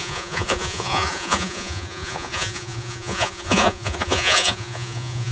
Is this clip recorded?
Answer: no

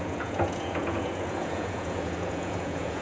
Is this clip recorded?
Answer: no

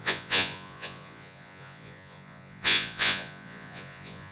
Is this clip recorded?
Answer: no